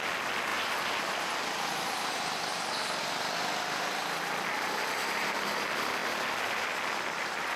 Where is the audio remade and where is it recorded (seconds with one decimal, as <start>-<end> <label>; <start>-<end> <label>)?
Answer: 0.0-7.6 recorded

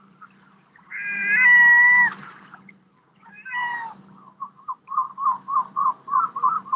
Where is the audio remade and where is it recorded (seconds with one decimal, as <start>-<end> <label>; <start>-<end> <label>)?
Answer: 0.0-1.2 remade; 1.2-2.2 recorded; 2.2-3.7 remade; 3.7-6.2 recorded; 6.2-6.8 remade

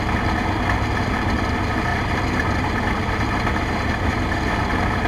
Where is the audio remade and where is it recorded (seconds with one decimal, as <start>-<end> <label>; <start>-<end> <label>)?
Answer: 0.0-1.9 recorded; 1.9-5.1 remade

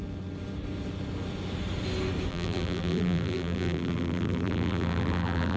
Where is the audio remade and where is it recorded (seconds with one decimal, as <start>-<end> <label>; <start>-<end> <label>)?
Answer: 0.0-2.3 recorded; 2.3-5.6 remade